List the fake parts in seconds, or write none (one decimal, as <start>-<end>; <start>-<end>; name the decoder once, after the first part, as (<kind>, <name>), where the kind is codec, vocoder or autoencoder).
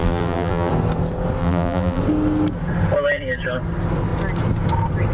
0.0-0.7 (vocoder, BigVGAN v2); 1.4-2.0